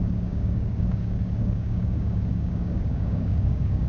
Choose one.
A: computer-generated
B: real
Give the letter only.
A